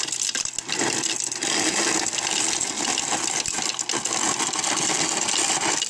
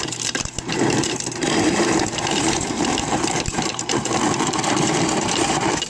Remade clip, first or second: second